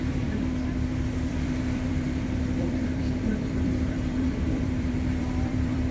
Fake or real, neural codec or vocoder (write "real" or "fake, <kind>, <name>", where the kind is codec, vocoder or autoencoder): fake, vocoder, BigVGAN v2